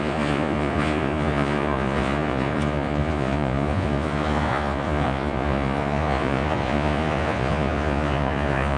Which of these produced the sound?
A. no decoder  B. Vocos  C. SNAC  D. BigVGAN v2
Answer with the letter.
B